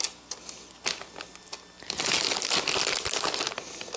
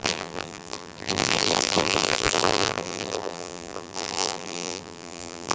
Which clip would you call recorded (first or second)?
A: first